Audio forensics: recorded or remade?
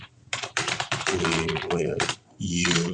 remade